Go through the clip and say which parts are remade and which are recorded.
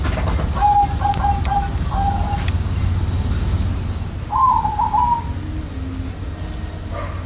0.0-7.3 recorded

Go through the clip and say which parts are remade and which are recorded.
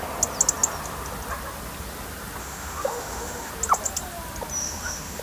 0.0-2.4 recorded; 2.4-3.5 remade; 3.5-4.6 recorded; 4.6-5.2 remade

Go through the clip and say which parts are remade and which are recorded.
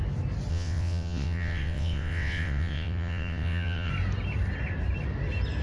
0.0-0.5 recorded; 0.5-3.9 remade; 3.9-5.6 recorded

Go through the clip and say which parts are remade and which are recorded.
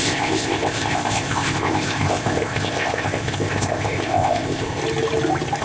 0.0-4.8 remade; 4.8-5.6 recorded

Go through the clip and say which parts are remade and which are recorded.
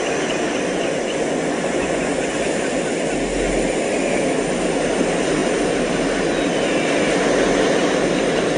0.0-0.7 recorded; 0.7-2.2 remade; 2.2-8.6 recorded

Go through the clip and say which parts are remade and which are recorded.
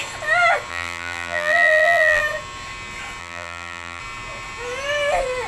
0.0-0.7 recorded; 0.7-2.2 remade; 2.2-3.2 recorded; 3.2-4.0 remade; 4.0-5.5 recorded